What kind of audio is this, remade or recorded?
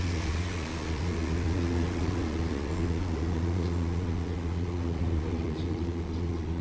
remade